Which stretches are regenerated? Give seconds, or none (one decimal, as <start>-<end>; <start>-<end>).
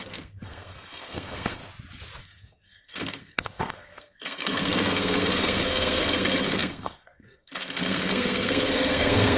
0.0-1.6; 2.2-9.4